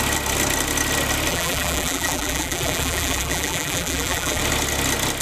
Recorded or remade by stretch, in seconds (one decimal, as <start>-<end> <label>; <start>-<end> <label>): 0.0-1.3 recorded; 1.3-4.4 remade; 4.4-5.2 recorded

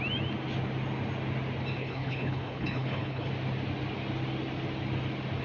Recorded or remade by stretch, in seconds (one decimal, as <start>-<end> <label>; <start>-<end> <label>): 0.0-1.8 recorded; 1.8-3.3 remade; 3.3-5.4 recorded

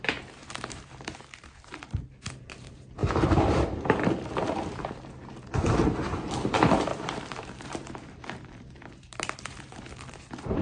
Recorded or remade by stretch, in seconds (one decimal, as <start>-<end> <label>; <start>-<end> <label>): 0.0-10.6 remade

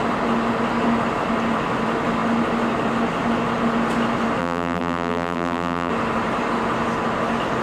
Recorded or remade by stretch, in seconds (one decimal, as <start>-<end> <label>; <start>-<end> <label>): 0.0-4.4 recorded; 4.4-5.9 remade; 5.9-7.6 recorded

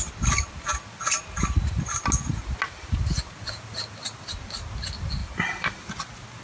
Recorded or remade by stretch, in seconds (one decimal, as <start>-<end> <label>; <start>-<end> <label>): 0.0-5.2 recorded; 5.2-5.8 remade; 5.8-6.4 recorded